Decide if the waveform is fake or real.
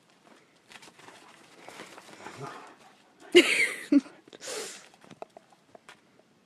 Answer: fake